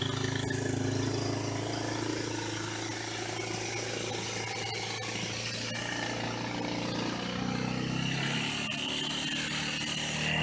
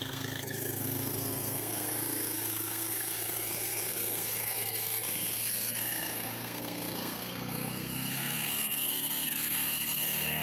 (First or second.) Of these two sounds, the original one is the first